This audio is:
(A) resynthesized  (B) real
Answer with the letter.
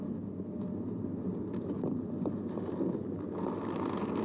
B